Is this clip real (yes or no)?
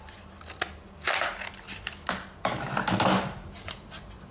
yes